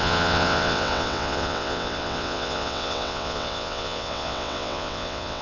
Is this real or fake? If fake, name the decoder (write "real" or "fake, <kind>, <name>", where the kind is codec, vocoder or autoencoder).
fake, vocoder, WaveNeXt